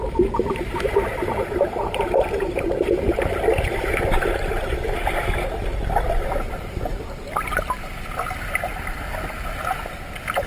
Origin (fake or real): real